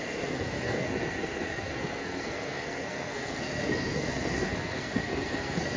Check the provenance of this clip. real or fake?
fake